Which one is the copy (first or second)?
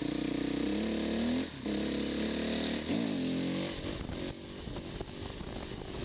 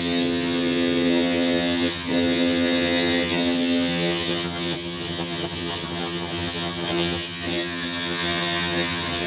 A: second